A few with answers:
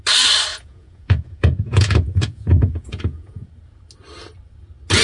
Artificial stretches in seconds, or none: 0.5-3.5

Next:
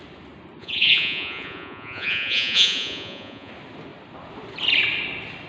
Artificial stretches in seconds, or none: 0.6-3.5